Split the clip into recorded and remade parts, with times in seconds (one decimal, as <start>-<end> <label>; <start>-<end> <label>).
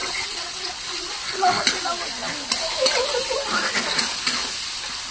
0.0-0.7 remade; 0.7-5.1 recorded